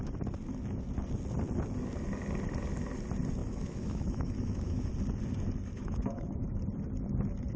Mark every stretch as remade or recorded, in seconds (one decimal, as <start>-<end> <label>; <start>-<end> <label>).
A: 0.0-3.4 recorded; 3.4-4.9 remade; 4.9-5.8 recorded; 5.8-6.6 remade; 6.6-7.6 recorded